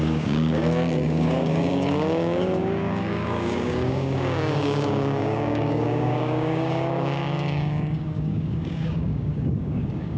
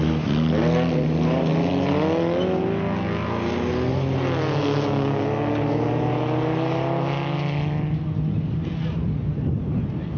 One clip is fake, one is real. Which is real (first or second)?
second